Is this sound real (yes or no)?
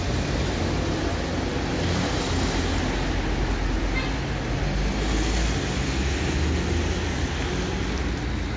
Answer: yes